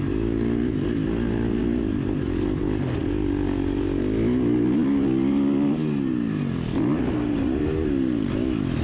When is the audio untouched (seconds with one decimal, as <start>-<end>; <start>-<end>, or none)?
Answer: 0.0-8.8